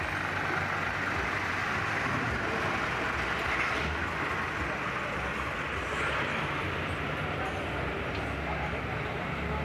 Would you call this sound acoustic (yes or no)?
yes